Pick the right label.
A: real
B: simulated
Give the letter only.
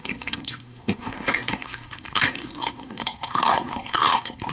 B